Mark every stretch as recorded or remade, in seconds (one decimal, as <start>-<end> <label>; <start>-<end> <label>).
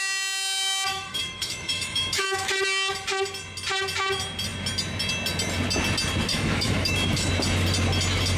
0.0-0.9 recorded; 0.9-2.5 remade; 2.5-6.3 recorded; 6.3-7.3 remade; 7.3-8.4 recorded